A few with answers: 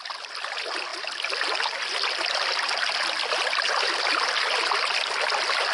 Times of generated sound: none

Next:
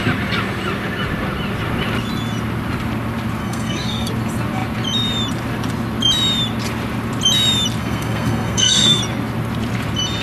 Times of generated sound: 3.4-4.1 (codec, SNAC); 7.8-9.0

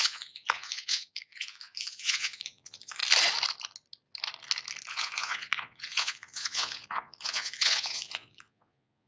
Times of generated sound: 0.0-3.0 (vocoder, Vocos); 4.9-9.1